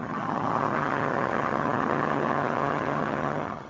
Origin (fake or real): fake